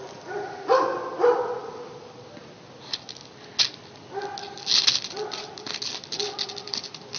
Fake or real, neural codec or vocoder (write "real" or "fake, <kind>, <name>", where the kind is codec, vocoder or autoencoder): real